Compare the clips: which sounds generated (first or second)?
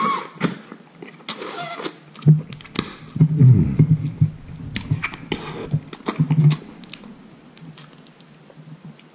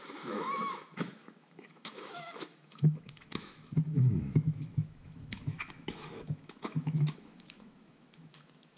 second